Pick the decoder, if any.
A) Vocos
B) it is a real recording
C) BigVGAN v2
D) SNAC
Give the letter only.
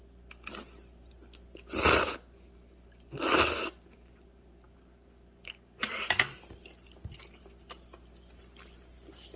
B